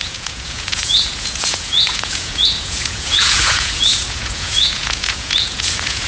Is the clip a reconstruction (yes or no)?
yes